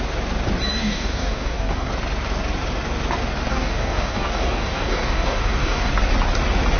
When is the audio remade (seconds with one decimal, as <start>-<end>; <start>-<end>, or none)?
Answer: 0.8-1.9; 3.5-5.9